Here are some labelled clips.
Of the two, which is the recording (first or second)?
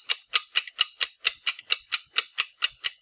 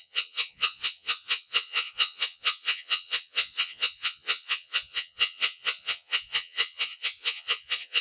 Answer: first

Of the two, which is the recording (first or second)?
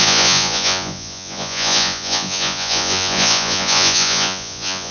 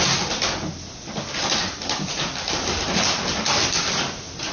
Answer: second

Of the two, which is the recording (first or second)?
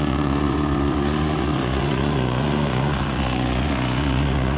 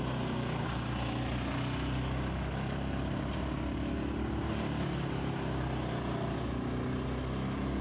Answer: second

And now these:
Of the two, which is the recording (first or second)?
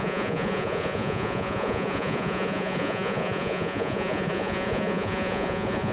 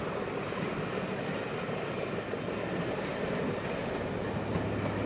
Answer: second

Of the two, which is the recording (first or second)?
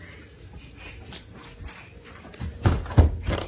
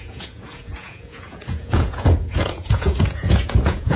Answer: first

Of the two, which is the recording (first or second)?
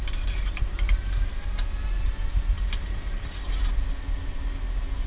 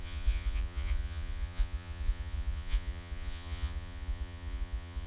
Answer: first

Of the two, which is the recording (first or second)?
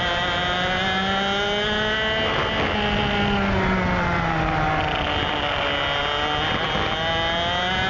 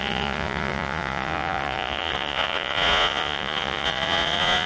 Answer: first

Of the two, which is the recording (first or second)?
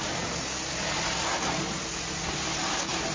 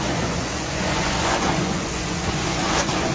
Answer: first